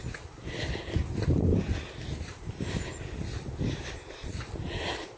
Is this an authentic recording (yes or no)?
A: yes